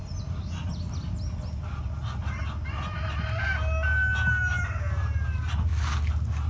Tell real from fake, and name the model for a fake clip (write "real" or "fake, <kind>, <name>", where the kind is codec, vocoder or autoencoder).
real